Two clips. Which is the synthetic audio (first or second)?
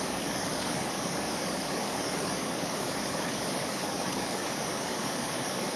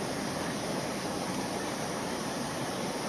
first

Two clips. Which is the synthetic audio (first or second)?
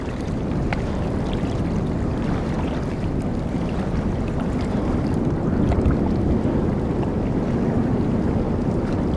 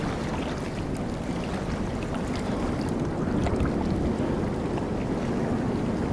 first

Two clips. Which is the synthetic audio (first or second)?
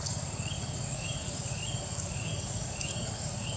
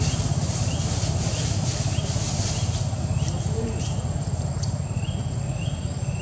first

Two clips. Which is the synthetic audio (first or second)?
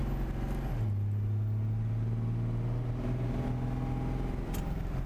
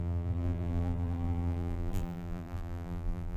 second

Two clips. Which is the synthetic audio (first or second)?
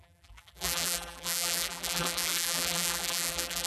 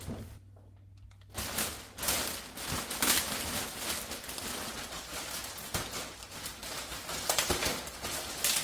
first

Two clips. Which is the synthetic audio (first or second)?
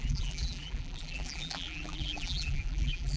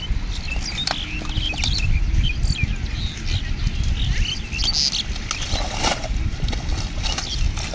first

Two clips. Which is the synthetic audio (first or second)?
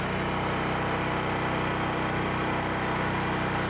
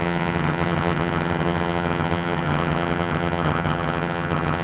second